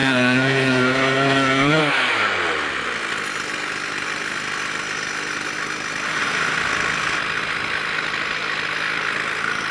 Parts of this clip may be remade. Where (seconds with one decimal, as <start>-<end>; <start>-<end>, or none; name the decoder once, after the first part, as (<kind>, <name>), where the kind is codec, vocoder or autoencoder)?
0.0-1.8 (codec, SNAC)

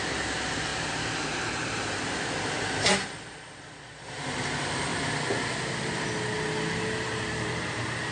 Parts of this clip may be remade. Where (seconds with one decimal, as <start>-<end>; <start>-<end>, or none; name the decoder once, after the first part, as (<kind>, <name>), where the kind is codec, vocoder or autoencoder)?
0.0-4.9 (vocoder, BigVGAN v2); 7.2-8.1

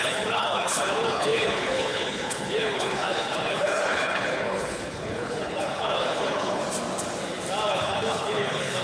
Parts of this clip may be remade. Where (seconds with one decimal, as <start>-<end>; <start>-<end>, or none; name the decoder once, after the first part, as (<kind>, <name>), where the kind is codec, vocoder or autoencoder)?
0.0-6.6 (codec, HILCodec); 7.7-8.8

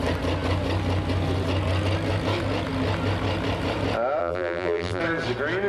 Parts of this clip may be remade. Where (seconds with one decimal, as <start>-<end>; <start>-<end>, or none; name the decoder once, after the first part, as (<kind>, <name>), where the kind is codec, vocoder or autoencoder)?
4.2-5.0 (vocoder, BigVGAN v2)

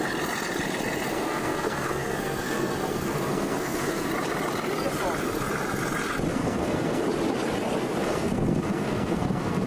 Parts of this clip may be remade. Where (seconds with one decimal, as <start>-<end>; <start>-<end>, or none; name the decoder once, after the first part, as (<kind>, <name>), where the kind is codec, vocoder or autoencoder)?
1.1-4.1 (codec, SNAC); 6.3-7.0; 8.0-9.7

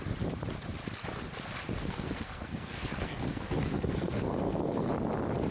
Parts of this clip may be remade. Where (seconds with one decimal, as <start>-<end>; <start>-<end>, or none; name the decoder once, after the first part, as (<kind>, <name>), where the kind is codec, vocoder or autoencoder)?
1.8-4.9 (codec, SNAC)

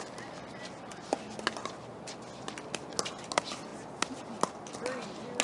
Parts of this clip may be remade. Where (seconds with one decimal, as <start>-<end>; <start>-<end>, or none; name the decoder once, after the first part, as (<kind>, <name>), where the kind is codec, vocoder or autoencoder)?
none